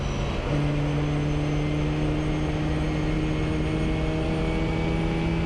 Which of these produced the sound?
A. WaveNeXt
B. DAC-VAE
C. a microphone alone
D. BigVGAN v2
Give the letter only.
C